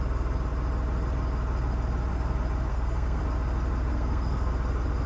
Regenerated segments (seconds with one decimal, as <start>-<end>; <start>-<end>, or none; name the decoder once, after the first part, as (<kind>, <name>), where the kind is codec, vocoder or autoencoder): 2.7-3.2 (codec, SNAC); 3.9-4.5